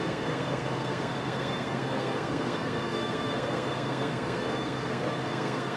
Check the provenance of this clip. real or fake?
fake